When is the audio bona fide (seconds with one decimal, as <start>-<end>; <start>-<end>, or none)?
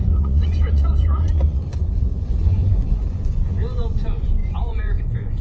none